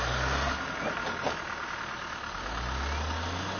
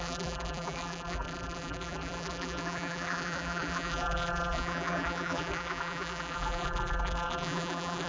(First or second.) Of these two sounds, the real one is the first